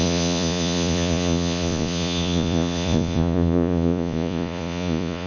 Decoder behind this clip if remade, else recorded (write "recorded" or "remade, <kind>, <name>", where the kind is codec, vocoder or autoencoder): remade, vocoder, Vocos